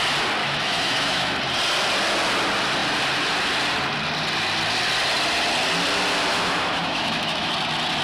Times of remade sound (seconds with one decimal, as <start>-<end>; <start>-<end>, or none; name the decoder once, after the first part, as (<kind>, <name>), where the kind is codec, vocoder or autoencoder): 0.4-1.4 (autoencoder, DAC-VAE); 6.3-7.5